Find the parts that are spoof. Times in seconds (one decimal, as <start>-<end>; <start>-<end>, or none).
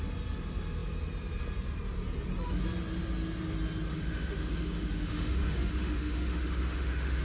3.9-7.2